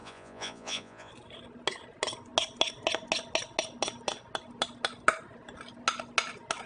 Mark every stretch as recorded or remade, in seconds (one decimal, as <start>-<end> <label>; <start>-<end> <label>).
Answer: 0.0-1.1 remade; 1.1-6.7 recorded

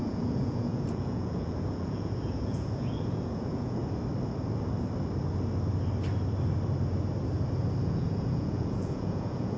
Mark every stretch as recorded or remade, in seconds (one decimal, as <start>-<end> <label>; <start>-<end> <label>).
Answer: 0.0-3.8 remade; 3.8-7.8 recorded; 7.8-9.6 remade

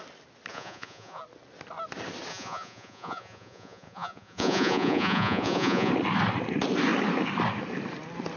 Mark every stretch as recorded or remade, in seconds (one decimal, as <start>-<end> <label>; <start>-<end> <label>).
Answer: 0.0-0.5 recorded; 0.5-1.2 remade; 1.2-2.3 recorded; 2.3-5.9 remade; 5.9-8.4 recorded

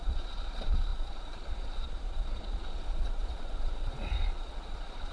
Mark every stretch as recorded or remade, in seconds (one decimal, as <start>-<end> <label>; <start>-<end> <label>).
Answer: 0.0-5.1 remade

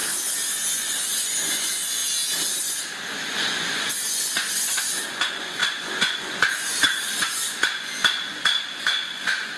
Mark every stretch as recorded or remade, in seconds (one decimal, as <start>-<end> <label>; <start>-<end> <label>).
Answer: 0.0-0.7 recorded; 0.7-2.0 remade; 2.0-2.6 recorded; 2.6-9.6 remade

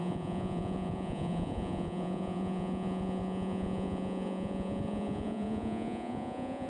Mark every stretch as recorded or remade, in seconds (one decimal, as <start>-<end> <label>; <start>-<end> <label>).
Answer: 0.0-6.7 remade

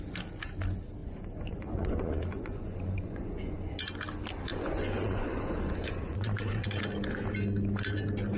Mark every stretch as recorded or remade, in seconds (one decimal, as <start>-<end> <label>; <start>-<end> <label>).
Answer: 0.0-1.0 recorded; 1.0-3.8 remade; 3.8-4.5 recorded; 4.5-6.8 remade; 6.8-8.4 recorded